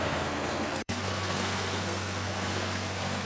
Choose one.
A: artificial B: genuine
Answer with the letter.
A